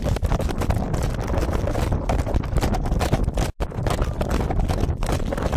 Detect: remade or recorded recorded